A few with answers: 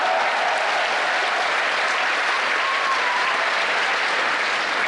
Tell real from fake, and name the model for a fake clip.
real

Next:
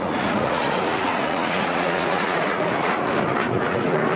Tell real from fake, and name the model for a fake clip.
fake, vocoder, Vocos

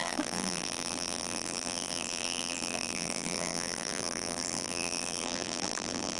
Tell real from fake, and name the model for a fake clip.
fake, vocoder, BigVGAN v2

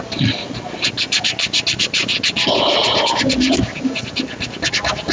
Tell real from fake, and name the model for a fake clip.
real